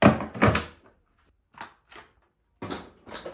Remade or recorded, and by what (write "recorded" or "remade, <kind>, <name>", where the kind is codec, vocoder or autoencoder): recorded